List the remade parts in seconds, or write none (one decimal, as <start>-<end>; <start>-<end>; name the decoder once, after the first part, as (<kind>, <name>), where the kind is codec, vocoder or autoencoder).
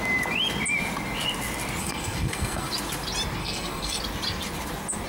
1.8-2.7 (codec, SNAC); 3.4-4.0